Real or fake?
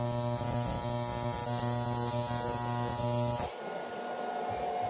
real